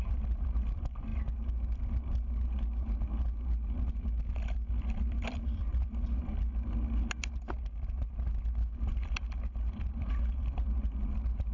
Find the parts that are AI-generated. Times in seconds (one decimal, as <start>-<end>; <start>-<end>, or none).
0.0-1.1; 4.7-6.3; 8.9-11.5